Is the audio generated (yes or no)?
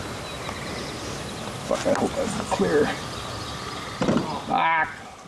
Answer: no